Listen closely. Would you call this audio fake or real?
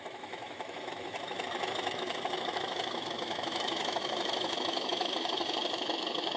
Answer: fake